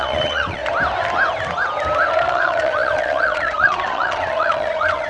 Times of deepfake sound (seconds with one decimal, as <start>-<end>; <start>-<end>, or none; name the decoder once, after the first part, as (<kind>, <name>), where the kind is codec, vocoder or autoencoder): 0.0-0.6 (vocoder, Vocos); 2.1-5.1